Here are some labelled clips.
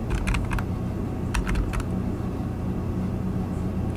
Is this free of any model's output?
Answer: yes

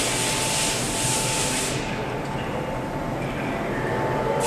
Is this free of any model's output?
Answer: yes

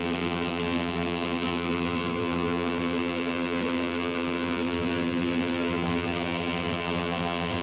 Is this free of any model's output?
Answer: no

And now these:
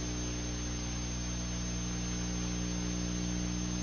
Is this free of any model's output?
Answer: yes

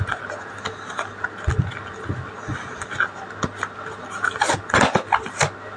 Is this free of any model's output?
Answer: yes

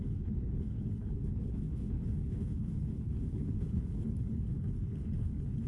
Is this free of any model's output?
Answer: no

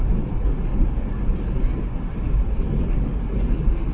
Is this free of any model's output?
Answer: yes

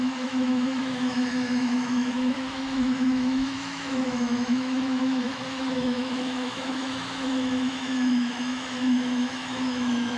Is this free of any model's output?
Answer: no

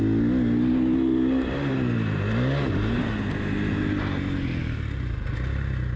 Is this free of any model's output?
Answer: yes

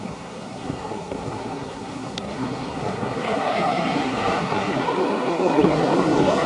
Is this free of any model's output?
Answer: no